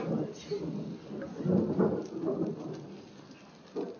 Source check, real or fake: real